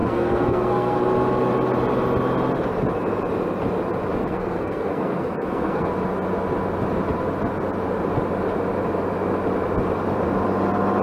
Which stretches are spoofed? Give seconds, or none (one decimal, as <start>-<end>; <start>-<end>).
0.0-1.0; 4.2-5.9